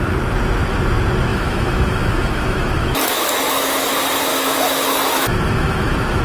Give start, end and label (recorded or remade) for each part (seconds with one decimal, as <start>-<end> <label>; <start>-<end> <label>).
0.0-1.3 recorded; 1.3-3.9 remade; 3.9-4.3 recorded; 4.3-6.2 remade